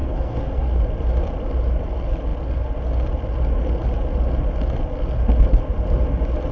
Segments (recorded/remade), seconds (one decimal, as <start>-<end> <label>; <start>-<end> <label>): 0.0-0.8 remade; 0.8-6.5 recorded